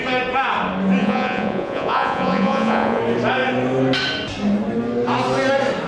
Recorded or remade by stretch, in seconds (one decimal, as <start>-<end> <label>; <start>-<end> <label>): 0.0-1.0 recorded; 1.0-3.0 remade; 3.0-5.9 recorded